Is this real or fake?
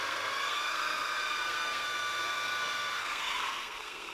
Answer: fake